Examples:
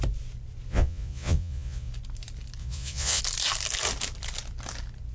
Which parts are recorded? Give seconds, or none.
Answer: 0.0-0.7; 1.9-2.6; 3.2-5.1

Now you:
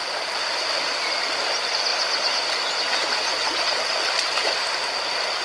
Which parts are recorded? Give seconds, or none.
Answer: 0.0-5.4